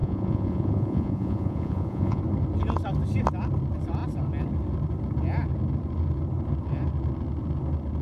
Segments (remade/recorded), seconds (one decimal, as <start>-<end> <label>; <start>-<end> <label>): 0.0-2.2 remade; 2.2-8.0 recorded